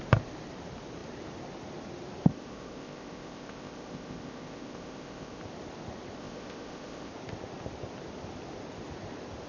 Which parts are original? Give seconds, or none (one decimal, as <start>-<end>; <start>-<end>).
0.0-2.3; 5.4-6.2; 7.1-9.5